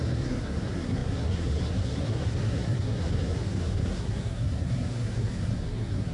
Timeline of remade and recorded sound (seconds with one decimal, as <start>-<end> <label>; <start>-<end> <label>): 0.0-6.1 remade